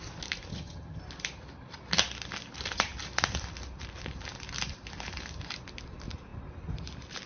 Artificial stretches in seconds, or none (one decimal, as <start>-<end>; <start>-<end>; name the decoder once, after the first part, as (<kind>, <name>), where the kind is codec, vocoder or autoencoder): 0.5-1.0 (vocoder, HiFi-GAN)